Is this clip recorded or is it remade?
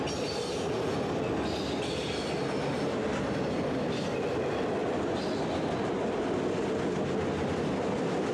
recorded